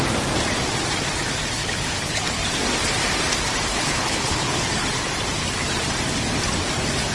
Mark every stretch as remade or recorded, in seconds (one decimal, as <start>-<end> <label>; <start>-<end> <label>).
0.0-1.6 recorded; 1.6-2.4 remade; 2.4-3.7 recorded; 3.7-4.7 remade; 4.7-7.1 recorded